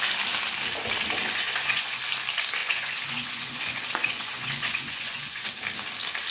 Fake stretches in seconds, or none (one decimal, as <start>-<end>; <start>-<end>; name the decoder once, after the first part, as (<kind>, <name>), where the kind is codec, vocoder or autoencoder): 1.2-2.0 (vocoder, Vocos); 2.6-5.5